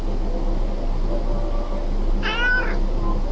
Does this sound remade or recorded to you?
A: recorded